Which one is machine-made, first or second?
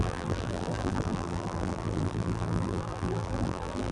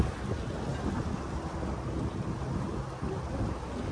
first